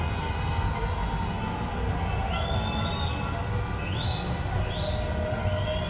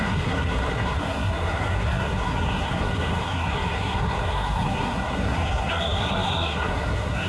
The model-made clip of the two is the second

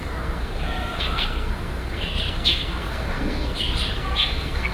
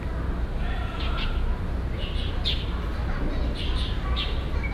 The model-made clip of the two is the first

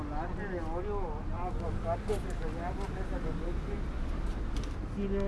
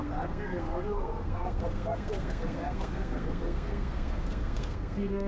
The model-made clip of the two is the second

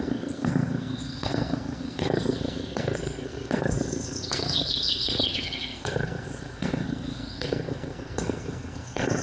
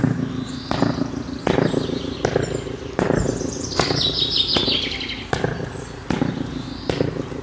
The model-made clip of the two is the first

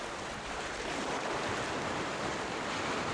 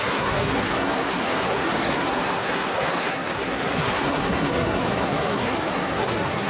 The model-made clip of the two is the second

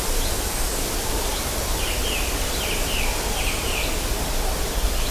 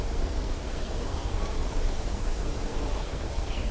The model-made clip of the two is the second